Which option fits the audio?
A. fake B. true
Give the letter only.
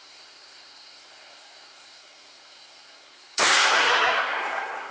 A